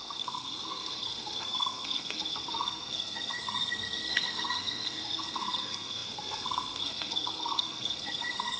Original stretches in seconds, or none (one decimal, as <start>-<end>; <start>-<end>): none